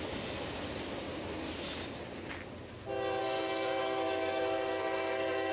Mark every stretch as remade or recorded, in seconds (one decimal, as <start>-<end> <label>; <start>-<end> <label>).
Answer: 0.0-3.2 recorded; 3.2-5.5 remade